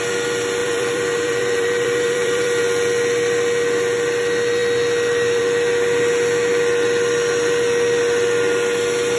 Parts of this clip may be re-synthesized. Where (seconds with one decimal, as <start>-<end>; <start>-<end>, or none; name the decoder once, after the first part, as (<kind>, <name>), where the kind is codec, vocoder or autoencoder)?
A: 0.6-2.6 (vocoder, BigVGAN v2)